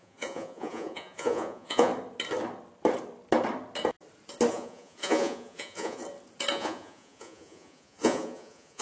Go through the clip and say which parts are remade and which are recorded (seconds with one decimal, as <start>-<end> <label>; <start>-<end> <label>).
0.0-1.9 remade; 1.9-4.5 recorded; 4.5-6.0 remade; 6.0-6.5 recorded; 6.5-8.8 remade